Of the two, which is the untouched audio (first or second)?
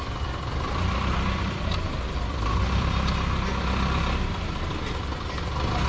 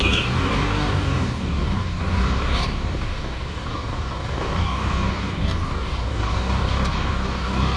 first